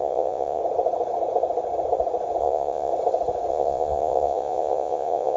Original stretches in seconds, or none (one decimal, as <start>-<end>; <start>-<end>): 0.6-2.4; 2.9-3.5